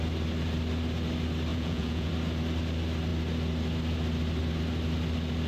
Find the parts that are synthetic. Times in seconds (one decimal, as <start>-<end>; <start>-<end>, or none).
1.5-2.1